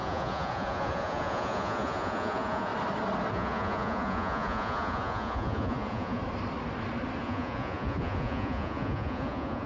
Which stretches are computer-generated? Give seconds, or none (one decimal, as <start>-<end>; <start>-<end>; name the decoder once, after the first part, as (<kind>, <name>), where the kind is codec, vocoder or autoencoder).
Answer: 0.0-2.7 (vocoder, Vocos); 3.3-6.2; 7.2-9.7